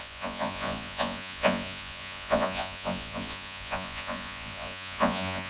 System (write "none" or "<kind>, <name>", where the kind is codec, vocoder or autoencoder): vocoder, Vocos